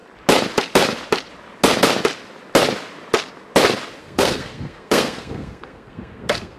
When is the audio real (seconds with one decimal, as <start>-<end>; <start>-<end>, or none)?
0.0-4.0